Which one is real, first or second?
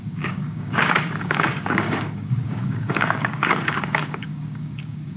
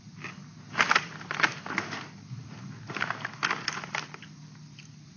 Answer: second